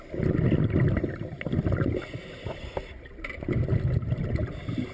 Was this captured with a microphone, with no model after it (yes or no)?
yes